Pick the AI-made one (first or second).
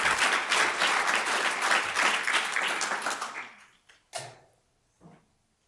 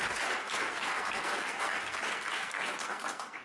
second